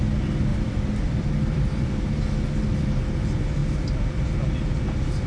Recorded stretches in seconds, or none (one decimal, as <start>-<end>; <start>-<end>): 0.0-0.5; 2.2-5.3